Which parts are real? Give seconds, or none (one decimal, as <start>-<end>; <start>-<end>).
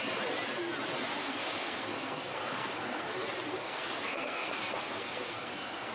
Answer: 0.0-1.2; 3.1-3.5